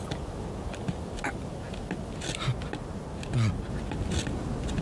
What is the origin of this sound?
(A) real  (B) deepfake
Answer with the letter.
A